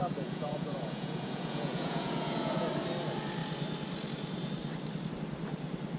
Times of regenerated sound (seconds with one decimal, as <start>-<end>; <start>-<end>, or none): 0.0-2.7